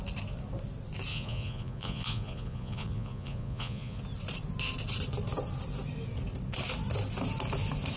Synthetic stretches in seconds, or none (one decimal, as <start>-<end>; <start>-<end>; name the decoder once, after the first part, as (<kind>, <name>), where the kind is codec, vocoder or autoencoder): 1.1-4.0 (vocoder, Vocos)